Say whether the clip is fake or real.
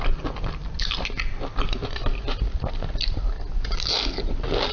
real